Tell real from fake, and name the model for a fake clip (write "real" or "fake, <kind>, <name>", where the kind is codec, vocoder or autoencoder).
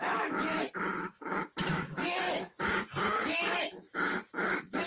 fake, autoencoder, DAC-VAE